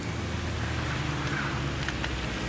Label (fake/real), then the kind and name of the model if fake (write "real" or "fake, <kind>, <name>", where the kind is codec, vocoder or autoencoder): real